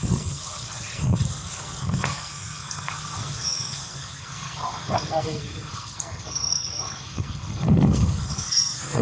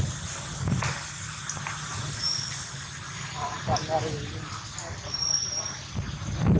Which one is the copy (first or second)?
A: first